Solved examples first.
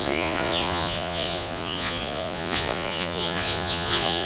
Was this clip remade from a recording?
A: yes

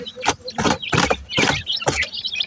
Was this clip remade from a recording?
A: yes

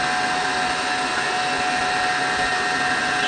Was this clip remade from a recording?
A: no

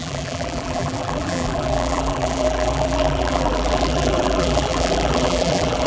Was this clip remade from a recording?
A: yes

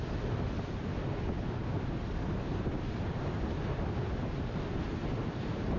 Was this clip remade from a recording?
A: no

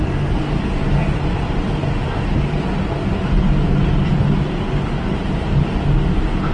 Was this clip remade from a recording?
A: no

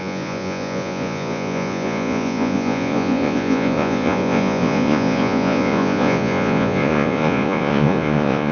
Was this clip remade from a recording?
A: yes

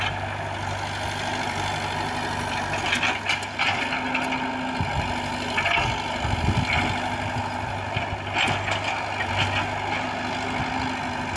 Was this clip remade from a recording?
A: no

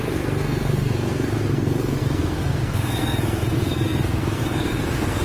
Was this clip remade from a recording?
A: yes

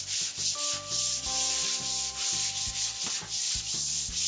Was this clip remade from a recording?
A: no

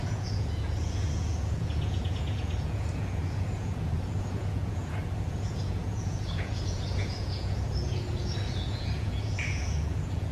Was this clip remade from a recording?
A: yes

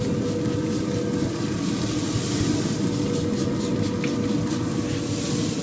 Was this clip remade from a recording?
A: no